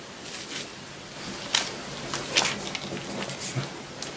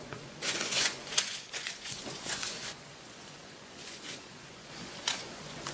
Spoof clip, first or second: second